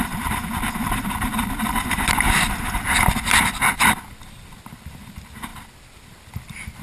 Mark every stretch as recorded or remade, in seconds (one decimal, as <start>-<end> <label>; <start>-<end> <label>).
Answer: 0.0-6.8 recorded